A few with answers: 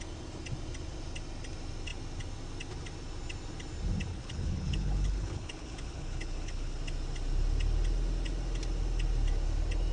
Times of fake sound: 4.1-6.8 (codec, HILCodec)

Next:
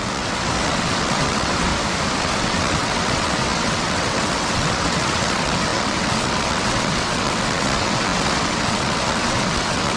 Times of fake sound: 0.0-1.7 (vocoder, WaveNeXt); 2.2-10.0

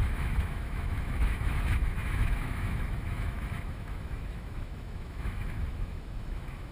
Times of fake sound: 0.0-6.7 (autoencoder, DAC-VAE)

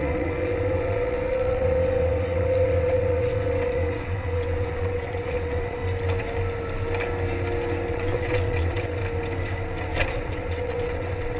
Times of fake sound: 0.0-5.8 (vocoder, WaveNeXt); 7.9-9.0; 10.1-11.4